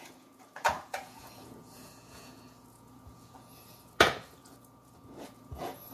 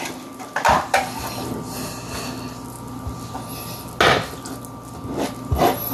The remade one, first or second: first